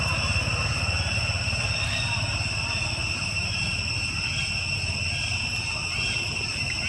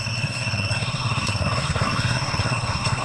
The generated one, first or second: second